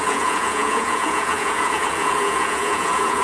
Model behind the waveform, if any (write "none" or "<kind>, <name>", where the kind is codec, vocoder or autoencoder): vocoder, Vocos